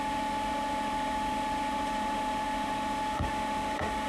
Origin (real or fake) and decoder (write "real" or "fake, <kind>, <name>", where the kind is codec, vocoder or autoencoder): fake, autoencoder, DAC-VAE